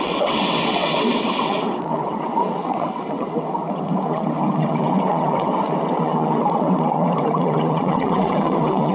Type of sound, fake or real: fake